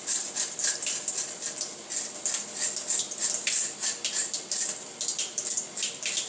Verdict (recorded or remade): recorded